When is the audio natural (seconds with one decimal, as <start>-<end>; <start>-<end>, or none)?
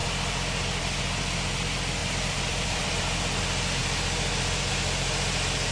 0.0-2.0; 3.4-3.8; 4.7-5.7